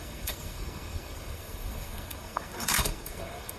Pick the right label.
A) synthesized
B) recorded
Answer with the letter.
A